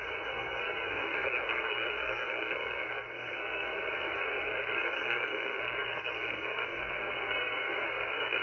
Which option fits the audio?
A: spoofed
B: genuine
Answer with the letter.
A